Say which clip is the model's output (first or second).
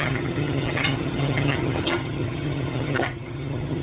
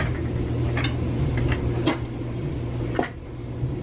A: first